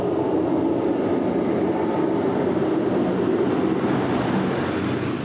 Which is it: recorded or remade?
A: recorded